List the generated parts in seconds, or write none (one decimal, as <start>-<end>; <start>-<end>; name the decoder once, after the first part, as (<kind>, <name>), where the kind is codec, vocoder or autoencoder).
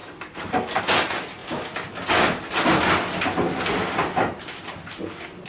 0.0-0.8 (codec, SNAC)